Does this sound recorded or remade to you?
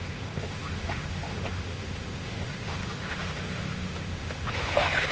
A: remade